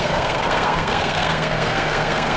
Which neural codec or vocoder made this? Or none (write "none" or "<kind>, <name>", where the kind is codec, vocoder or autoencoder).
codec, SNAC